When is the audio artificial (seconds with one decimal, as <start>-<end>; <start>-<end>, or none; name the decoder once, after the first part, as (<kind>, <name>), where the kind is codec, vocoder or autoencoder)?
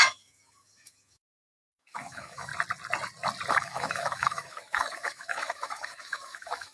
0.0-2.5 (autoencoder, DAC-VAE); 3.5-6.7